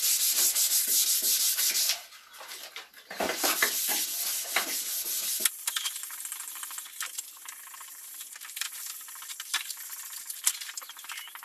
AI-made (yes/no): no